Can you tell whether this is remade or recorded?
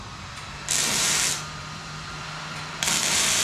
remade